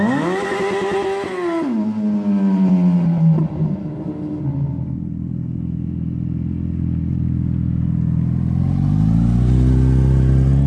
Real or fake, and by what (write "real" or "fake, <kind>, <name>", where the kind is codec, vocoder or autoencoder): real